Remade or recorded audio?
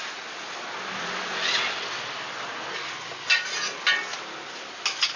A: recorded